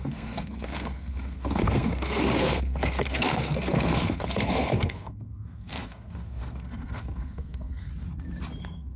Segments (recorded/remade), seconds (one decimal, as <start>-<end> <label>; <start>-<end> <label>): 0.0-7.9 remade; 7.9-8.6 recorded; 8.6-9.0 remade